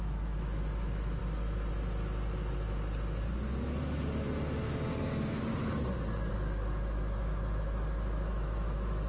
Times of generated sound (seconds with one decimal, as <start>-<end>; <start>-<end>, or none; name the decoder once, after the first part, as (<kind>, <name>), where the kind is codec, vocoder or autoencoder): 0.0-1.2 (autoencoder, DAC-VAE); 6.3-9.1